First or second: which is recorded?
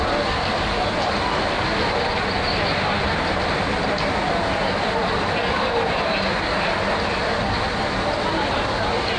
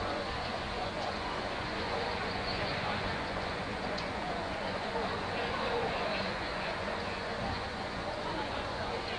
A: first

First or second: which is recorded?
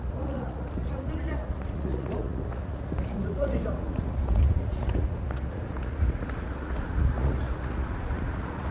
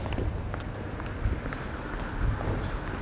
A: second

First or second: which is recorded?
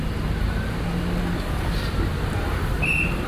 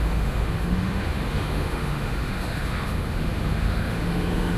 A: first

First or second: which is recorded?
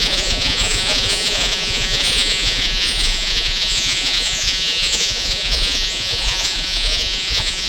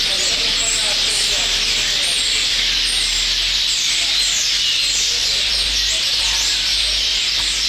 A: second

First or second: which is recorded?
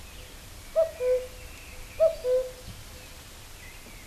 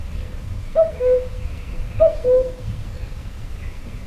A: first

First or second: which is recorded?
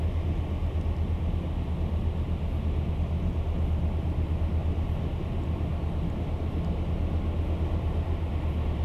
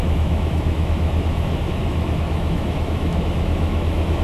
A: first